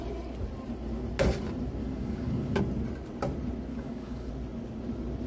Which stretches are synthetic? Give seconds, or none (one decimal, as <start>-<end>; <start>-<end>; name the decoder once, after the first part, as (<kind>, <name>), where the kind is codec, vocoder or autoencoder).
1.8-2.6 (codec, DAC); 3.7-4.3